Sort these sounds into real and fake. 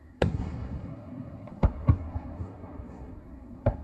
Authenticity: fake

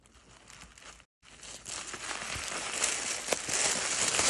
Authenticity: real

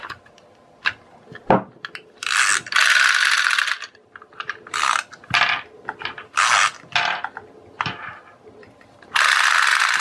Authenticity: real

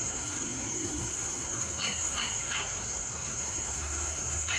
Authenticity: fake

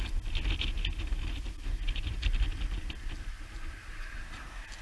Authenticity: real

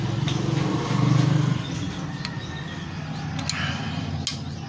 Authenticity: real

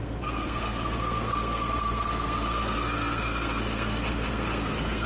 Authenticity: fake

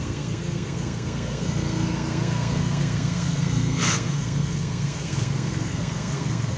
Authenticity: fake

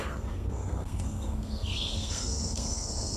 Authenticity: fake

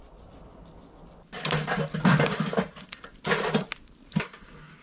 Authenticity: real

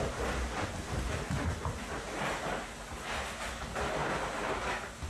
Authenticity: real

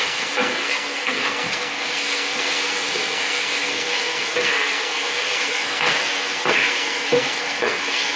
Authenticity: fake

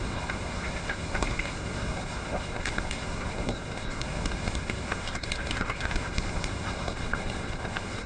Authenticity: fake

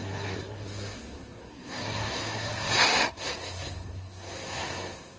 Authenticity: fake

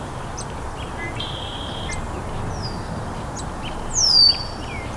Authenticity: real